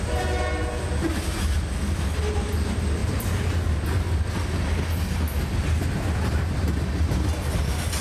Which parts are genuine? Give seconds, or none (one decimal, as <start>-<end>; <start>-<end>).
0.0-8.0